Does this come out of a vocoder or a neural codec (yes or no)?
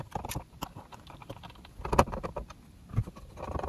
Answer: no